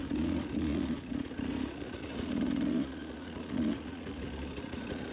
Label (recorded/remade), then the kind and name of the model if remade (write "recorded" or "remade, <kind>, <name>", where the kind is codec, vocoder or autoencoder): remade, vocoder, Vocos